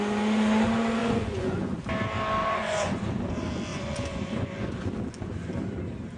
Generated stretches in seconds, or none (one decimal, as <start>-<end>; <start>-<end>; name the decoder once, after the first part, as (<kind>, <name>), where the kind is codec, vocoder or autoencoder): 1.0-1.8 (vocoder, Vocos); 2.4-3.0; 3.7-4.9